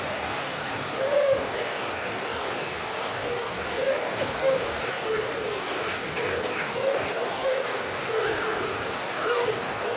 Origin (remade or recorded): remade